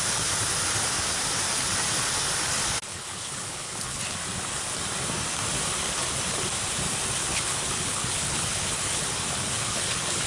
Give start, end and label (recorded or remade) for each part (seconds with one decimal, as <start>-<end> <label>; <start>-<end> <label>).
0.0-2.9 recorded; 2.9-4.0 remade; 4.0-7.2 recorded; 7.2-10.3 remade